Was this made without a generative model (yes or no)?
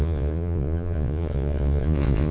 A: no